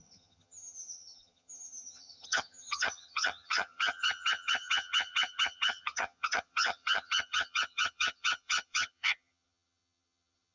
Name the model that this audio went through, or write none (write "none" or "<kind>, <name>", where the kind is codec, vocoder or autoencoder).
vocoder, HiFi-GAN